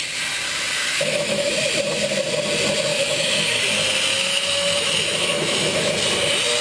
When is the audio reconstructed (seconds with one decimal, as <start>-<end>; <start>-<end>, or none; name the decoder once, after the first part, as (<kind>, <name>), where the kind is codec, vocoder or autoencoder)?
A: 0.8-1.5 (autoencoder, DAC-VAE); 2.9-3.6; 4.1-5.9